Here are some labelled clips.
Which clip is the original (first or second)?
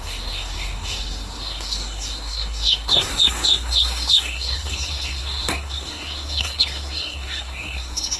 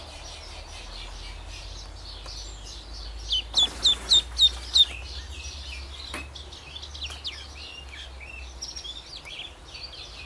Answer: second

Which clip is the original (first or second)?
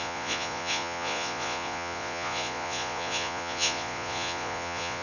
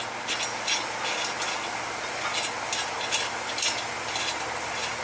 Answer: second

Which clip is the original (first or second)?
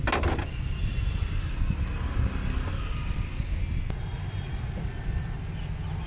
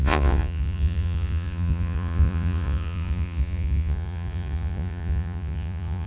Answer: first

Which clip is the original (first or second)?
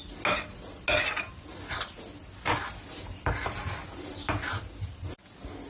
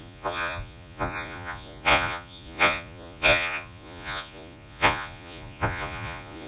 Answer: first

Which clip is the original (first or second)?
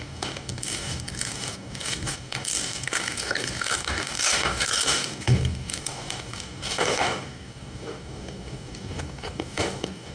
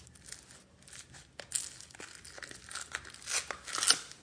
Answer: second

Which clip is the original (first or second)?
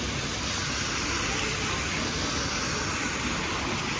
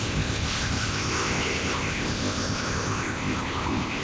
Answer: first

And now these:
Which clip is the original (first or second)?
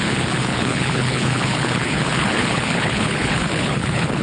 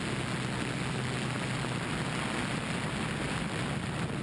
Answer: second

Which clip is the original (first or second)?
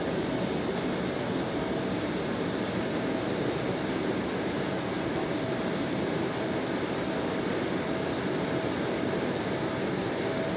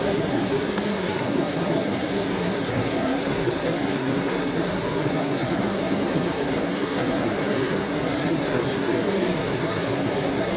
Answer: first